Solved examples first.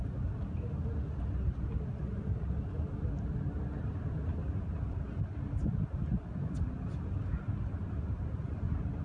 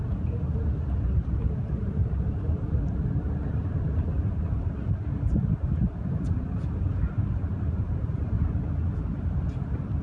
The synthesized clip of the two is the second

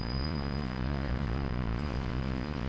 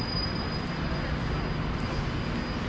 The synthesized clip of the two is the first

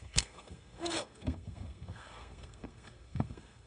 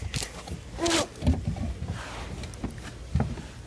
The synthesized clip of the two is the first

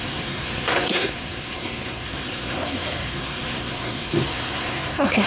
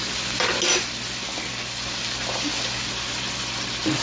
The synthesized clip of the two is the first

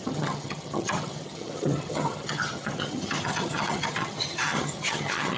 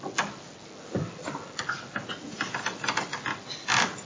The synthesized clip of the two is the first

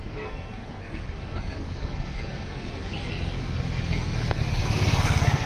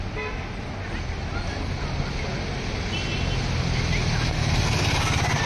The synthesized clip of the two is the first